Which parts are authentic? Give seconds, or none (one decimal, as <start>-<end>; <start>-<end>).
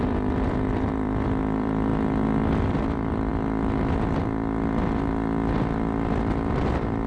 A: 1.9-2.5; 3.3-6.5